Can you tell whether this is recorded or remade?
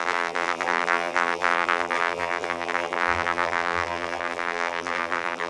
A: remade